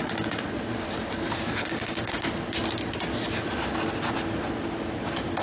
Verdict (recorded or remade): recorded